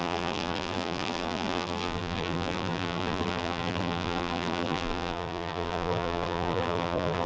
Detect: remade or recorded remade